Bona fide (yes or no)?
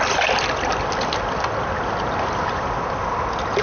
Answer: yes